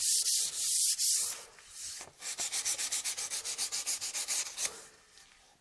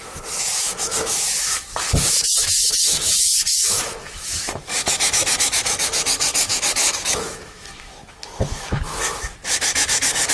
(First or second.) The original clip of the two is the first